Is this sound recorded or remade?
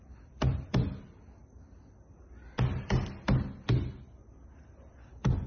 recorded